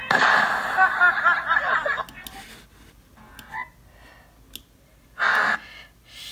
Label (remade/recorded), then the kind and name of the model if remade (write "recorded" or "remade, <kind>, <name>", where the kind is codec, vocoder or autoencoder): recorded